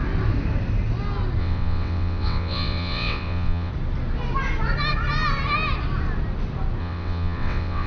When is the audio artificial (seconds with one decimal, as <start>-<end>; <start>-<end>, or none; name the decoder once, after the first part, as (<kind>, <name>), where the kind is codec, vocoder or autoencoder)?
1.4-3.7 (vocoder, WaveNeXt); 6.8-7.9